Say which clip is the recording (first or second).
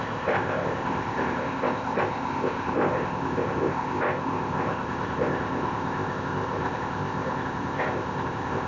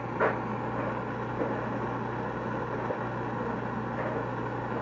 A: second